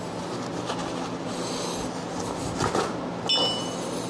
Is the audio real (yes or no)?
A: yes